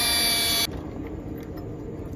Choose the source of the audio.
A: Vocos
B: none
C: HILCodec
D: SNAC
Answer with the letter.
B